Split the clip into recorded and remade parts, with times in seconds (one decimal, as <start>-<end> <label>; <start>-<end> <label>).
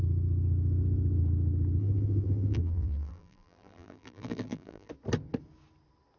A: 0.0-1.8 recorded; 1.8-4.9 remade; 4.9-6.2 recorded